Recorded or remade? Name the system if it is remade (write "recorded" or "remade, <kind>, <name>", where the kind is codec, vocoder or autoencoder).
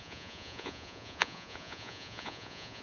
remade, vocoder, Vocos